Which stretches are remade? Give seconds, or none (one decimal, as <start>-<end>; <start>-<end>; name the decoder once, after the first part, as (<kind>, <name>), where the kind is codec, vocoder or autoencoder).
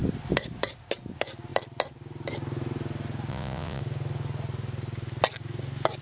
3.3-3.8 (vocoder, Vocos)